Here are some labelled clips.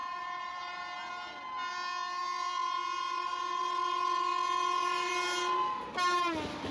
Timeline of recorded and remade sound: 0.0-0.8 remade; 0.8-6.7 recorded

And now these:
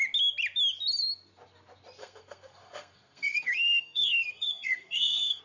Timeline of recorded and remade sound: 0.0-2.0 recorded; 2.0-5.4 remade